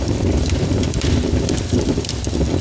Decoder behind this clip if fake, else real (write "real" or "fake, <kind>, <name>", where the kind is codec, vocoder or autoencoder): fake, vocoder, BigVGAN v2